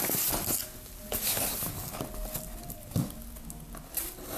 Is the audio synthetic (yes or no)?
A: no